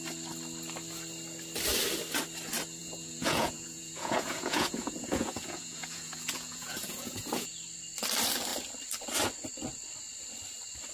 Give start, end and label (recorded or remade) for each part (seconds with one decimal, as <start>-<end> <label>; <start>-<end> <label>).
0.0-2.8 recorded; 2.8-7.5 remade; 7.5-10.9 recorded